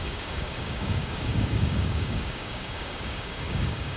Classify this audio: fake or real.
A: fake